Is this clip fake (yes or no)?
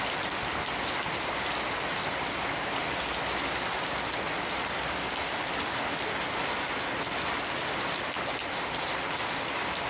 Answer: no